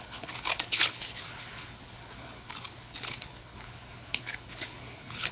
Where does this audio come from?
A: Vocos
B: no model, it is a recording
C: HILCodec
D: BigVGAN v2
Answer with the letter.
C